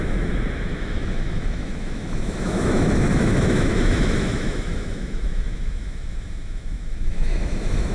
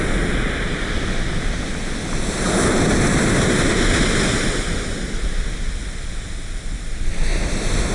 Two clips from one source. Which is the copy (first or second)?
first